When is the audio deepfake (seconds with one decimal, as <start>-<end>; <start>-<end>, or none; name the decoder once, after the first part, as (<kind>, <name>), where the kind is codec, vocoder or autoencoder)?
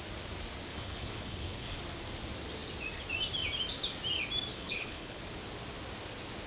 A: 0.7-1.8 (codec, HILCodec); 4.5-5.2